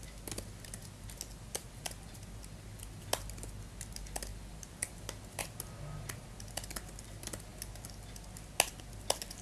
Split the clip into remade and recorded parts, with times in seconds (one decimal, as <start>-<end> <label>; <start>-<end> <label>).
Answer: 0.0-9.4 recorded